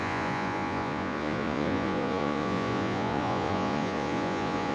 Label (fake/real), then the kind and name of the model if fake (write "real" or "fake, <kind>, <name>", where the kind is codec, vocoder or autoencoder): fake, vocoder, Vocos